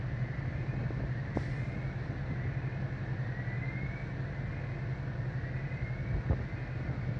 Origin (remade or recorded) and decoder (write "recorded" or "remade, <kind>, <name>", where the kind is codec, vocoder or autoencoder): recorded